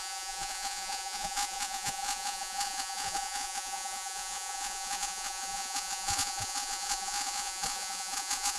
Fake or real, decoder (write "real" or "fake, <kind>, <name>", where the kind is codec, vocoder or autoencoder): fake, vocoder, Vocos